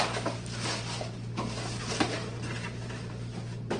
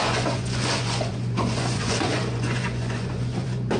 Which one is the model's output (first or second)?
second